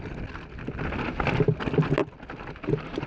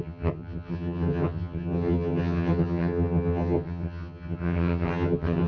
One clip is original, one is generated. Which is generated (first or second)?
second